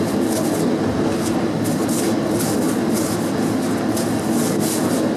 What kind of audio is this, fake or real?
real